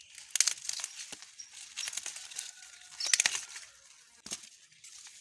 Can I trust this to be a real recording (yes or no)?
yes